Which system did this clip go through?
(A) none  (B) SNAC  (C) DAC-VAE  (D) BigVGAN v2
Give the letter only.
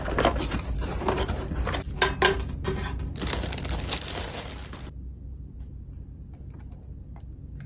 A